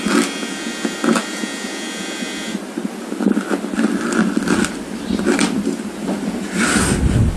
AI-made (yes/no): no